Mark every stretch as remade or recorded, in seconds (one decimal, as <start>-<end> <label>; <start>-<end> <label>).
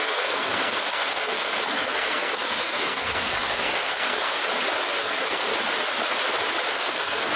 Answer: 0.0-4.4 remade; 4.4-5.0 recorded; 5.0-5.5 remade; 5.5-6.7 recorded; 6.7-7.4 remade